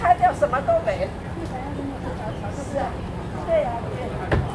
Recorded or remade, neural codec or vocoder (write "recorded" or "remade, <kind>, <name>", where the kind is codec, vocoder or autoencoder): recorded